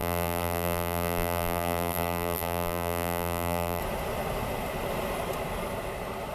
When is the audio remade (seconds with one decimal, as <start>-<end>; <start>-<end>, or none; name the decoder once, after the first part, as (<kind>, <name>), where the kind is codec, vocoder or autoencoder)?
0.0-3.8 (vocoder, BigVGAN v2)